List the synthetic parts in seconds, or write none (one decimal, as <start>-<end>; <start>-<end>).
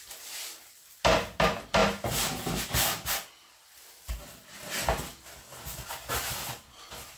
none